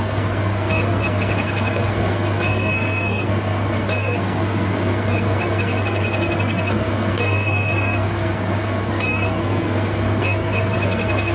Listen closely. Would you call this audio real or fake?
fake